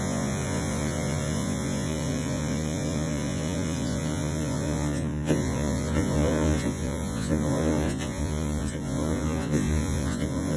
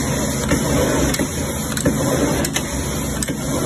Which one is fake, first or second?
first